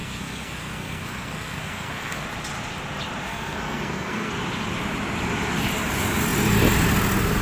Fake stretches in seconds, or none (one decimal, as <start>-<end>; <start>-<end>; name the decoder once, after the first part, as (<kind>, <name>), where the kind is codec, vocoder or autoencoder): 0.0-2.2 (codec, SNAC); 3.3-4.3